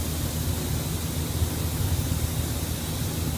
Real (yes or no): yes